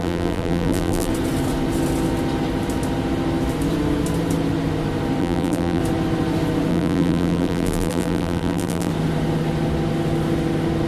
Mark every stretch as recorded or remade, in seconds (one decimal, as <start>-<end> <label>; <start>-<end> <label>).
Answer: 0.0-1.1 remade; 1.1-5.2 recorded; 5.2-5.8 remade; 5.8-6.7 recorded; 6.7-8.9 remade; 8.9-10.9 recorded